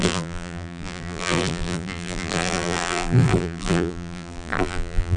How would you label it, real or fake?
fake